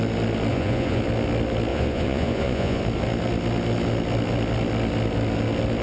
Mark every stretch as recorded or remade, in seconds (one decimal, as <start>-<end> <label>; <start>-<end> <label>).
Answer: 0.0-0.5 recorded; 0.5-1.0 remade; 1.0-1.7 recorded; 1.7-2.8 remade; 2.8-5.8 recorded